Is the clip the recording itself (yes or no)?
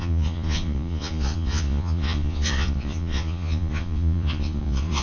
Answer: no